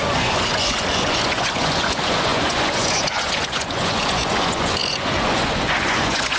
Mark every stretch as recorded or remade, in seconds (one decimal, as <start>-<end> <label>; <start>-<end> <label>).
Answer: 0.0-6.4 remade